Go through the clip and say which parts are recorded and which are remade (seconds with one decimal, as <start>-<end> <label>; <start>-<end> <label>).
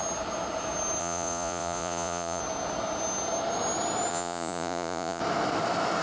0.0-1.0 recorded; 1.0-2.4 remade; 2.4-4.1 recorded; 4.1-5.2 remade; 5.2-6.0 recorded